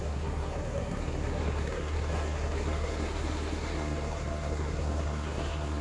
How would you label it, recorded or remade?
remade